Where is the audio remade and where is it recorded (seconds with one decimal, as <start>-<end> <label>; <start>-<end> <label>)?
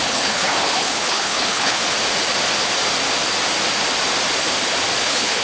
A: 0.0-1.8 remade; 1.8-5.0 recorded; 5.0-5.4 remade